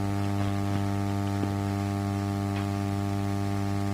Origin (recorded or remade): recorded